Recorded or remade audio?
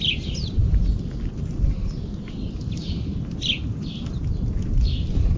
recorded